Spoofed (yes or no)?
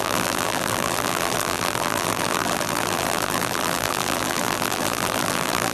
yes